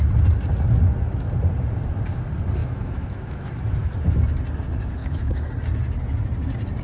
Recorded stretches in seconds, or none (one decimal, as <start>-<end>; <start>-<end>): 0.0-2.6; 3.5-5.0; 5.5-6.8